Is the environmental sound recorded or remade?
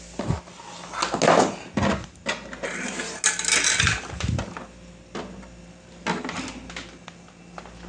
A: recorded